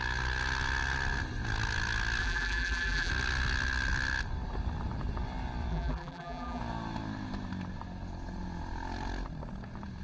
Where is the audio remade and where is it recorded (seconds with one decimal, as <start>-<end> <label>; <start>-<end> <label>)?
0.0-2.2 recorded; 2.2-3.1 remade; 3.1-5.7 recorded; 5.7-6.6 remade; 6.6-10.0 recorded